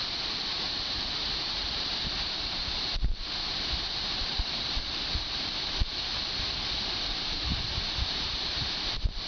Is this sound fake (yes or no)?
yes